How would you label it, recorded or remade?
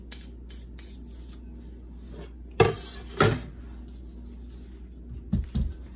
recorded